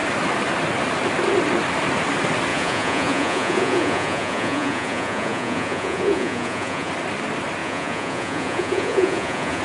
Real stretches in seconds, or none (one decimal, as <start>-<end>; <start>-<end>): 0.0-2.5; 6.9-7.6